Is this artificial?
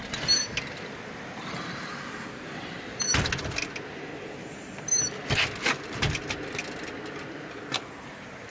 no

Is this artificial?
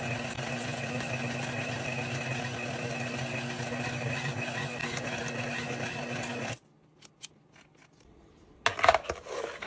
no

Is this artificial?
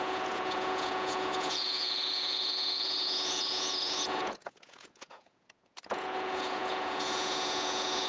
yes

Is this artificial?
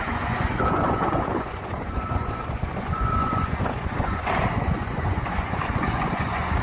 yes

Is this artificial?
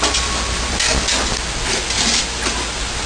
no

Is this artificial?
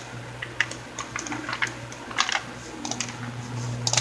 no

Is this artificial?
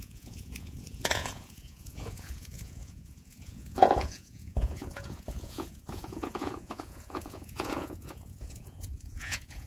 yes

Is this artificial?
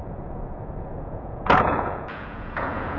yes